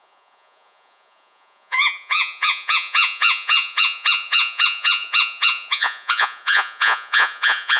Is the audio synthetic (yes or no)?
yes